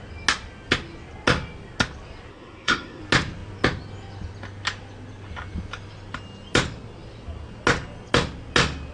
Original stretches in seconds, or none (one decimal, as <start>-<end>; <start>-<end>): 0.0-2.3; 3.0-8.9